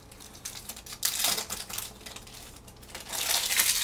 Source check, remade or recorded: recorded